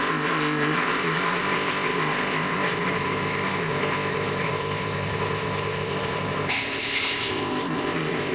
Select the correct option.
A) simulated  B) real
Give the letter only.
A